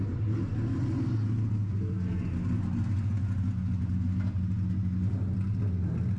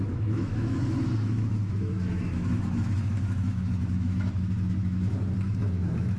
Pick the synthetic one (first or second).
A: second